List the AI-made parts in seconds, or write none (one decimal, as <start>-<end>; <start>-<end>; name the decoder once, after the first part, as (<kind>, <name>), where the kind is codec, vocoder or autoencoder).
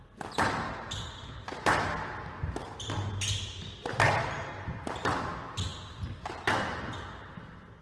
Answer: none